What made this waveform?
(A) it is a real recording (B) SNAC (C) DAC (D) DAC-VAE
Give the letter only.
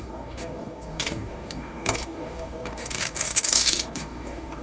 C